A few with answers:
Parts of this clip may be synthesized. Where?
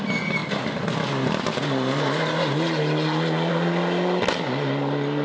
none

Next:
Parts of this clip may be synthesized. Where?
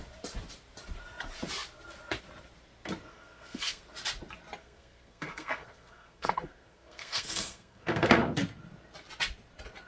3.1-3.8 (codec, SNAC); 4.6-8.2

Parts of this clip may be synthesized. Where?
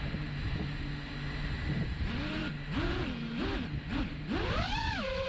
0.0-0.9 (vocoder, BigVGAN v2); 1.8-2.4; 4.0-5.3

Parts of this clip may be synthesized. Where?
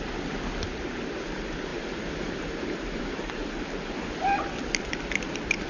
1.7-3.0 (vocoder, BigVGAN v2)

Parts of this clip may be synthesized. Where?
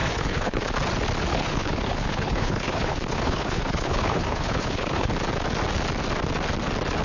0.0-0.7 (codec, HILCodec); 1.3-5.1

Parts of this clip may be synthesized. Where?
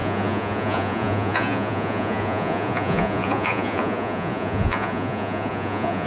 0.0-6.1 (vocoder, Vocos)